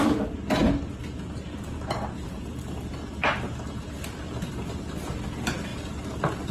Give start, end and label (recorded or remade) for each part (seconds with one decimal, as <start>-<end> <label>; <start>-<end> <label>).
0.0-6.5 recorded